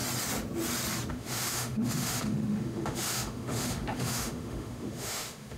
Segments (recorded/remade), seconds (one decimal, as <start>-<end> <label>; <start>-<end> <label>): 0.0-1.1 recorded; 1.1-5.6 remade